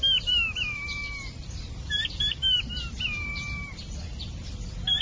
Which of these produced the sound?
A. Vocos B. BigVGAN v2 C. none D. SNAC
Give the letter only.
C